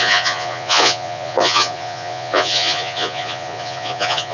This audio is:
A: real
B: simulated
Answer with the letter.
B